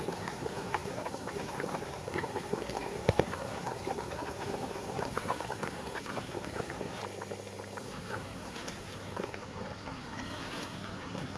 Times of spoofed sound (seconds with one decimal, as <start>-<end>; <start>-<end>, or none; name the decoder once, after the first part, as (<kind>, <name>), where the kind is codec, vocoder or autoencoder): 0.0-7.0 (codec, SNAC); 7.8-11.4